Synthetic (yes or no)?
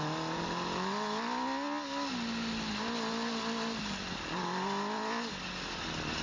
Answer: no